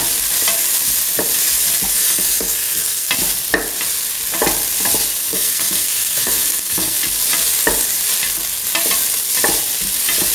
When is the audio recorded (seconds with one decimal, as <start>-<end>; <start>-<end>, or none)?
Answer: 0.0-1.9; 3.1-5.2; 7.0-10.3